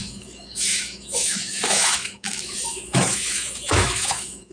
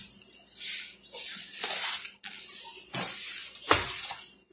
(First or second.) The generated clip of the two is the first